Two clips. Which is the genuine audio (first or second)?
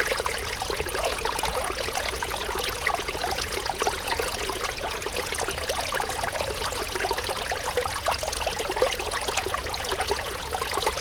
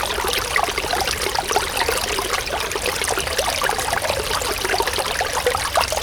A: second